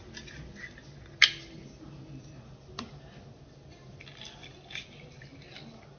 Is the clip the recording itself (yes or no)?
yes